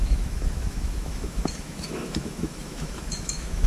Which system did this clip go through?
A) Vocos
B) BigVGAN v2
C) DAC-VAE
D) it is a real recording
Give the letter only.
C